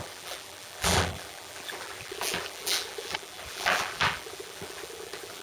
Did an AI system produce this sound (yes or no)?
yes